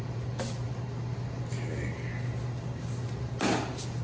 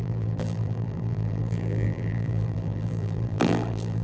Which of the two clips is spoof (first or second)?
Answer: second